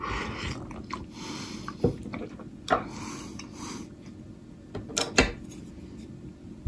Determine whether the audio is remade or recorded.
recorded